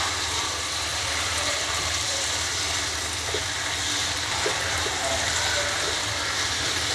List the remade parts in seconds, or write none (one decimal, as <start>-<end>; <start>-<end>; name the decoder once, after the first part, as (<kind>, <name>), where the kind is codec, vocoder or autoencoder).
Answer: 0.9-2.5 (vocoder, BigVGAN v2); 4.0-4.9